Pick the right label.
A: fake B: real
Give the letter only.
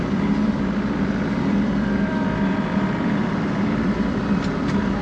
A